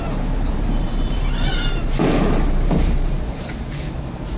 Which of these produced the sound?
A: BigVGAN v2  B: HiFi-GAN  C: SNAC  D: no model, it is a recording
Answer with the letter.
A